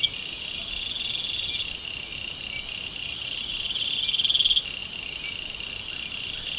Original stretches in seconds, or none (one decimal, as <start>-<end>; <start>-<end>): 0.0-6.6